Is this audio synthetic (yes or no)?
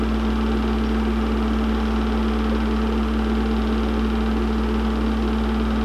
no